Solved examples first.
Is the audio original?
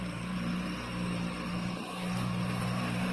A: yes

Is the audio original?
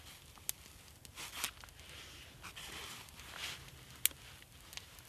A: yes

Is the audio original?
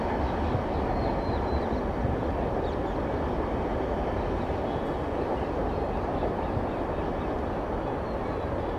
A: yes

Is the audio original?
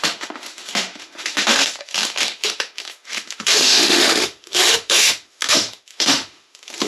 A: no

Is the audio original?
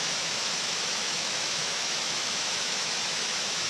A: no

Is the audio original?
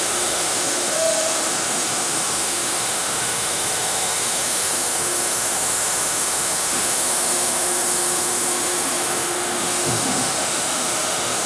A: no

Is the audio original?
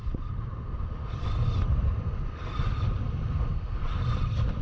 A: yes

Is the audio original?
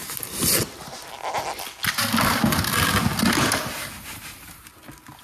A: yes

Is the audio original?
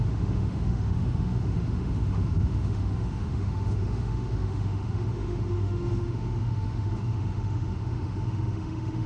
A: no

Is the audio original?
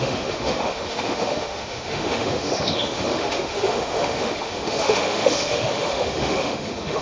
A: no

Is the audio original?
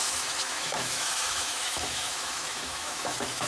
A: no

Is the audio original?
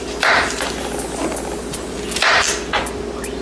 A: yes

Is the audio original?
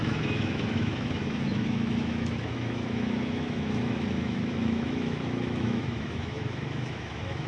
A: no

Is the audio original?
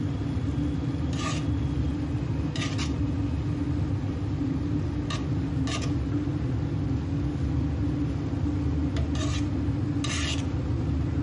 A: yes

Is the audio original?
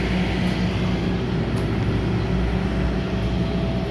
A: yes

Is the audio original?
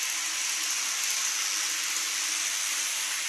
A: yes